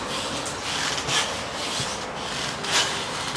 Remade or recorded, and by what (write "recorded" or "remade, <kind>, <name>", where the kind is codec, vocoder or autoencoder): recorded